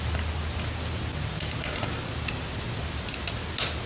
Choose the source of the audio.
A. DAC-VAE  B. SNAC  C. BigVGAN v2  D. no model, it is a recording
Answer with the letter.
D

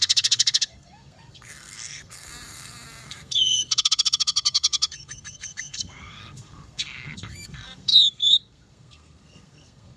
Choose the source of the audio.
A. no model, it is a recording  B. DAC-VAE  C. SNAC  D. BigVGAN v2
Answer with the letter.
C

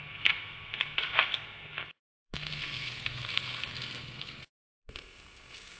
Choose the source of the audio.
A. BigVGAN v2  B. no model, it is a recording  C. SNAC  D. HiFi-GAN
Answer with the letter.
C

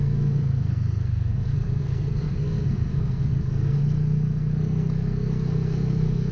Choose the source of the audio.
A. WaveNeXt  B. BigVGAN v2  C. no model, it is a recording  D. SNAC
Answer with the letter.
D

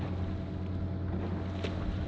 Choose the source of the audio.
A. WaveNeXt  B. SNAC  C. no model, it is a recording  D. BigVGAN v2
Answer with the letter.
C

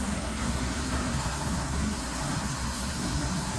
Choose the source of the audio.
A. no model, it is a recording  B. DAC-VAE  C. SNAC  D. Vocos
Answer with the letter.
C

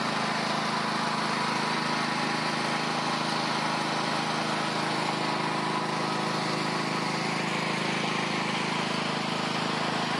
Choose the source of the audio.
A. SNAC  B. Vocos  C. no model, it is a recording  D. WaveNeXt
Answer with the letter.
C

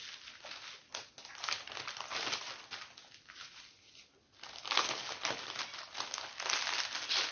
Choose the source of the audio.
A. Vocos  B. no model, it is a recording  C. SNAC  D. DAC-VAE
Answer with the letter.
B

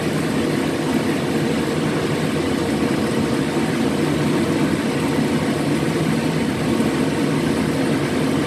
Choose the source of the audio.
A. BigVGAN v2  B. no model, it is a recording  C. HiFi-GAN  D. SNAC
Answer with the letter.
B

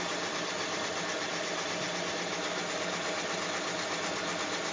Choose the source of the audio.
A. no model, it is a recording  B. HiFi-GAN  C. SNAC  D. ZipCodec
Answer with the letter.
A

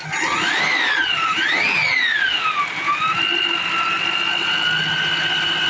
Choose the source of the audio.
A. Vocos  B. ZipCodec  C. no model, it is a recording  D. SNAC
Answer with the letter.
C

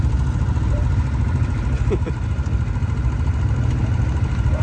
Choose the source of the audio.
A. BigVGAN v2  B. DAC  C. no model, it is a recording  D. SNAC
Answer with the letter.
C